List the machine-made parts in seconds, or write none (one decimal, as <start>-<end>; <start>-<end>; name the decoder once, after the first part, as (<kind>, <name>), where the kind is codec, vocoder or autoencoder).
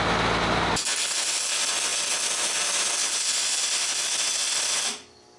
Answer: none